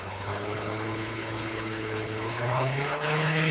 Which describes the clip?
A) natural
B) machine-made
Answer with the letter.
B